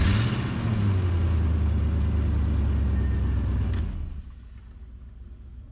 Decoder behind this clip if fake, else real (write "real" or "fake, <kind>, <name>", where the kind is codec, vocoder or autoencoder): real